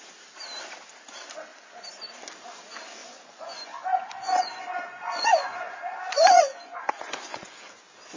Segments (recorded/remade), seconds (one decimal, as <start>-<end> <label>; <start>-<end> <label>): 0.0-3.0 recorded; 3.0-7.5 remade; 7.5-8.2 recorded